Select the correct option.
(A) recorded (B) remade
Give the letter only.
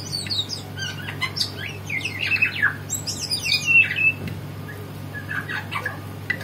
A